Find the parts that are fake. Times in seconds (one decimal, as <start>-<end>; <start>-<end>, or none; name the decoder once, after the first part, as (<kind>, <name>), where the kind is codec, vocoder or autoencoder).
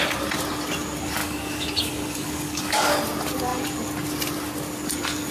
1.2-3.0 (codec, DAC)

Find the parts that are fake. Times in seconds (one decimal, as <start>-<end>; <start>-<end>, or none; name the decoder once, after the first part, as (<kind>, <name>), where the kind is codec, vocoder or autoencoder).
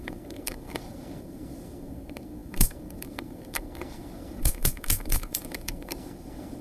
0.0-6.6 (codec, SNAC)